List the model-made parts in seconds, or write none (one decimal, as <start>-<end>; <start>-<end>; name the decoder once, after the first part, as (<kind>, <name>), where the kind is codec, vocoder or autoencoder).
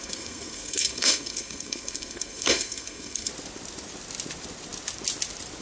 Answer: 0.0-3.3 (codec, SNAC)